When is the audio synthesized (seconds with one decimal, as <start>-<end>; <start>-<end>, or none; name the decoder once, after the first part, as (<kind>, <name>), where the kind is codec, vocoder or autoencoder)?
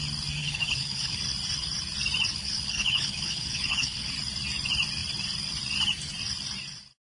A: 0.4-1.2 (codec, HILCodec); 2.3-4.1